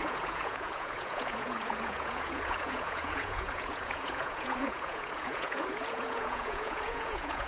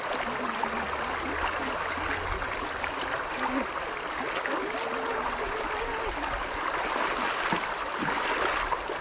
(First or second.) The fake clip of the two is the first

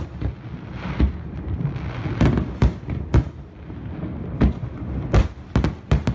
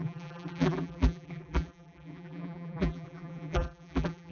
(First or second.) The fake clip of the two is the second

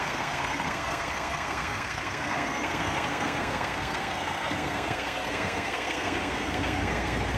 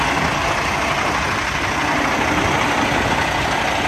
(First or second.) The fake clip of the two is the first